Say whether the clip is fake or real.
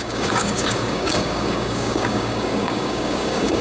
fake